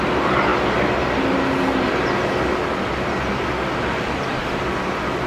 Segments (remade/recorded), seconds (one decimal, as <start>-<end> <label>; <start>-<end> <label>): 0.0-5.3 recorded